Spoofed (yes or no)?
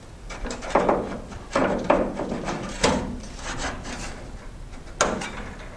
no